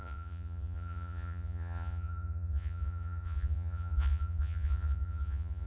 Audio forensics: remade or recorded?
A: remade